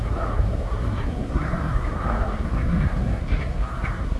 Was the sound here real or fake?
fake